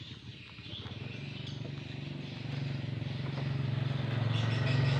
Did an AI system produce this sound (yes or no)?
no